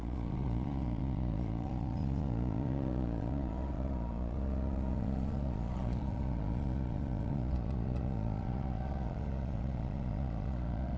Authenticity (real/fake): fake